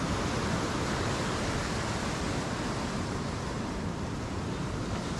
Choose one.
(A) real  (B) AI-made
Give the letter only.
A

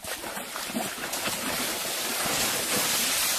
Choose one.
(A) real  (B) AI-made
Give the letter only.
A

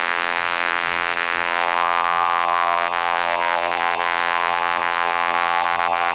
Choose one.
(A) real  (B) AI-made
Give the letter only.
B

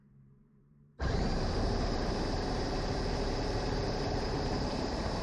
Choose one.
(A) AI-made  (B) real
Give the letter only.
A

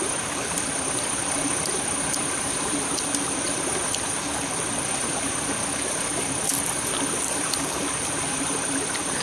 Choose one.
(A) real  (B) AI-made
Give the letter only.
B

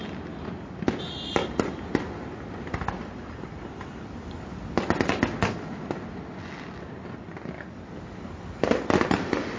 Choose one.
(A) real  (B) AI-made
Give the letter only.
A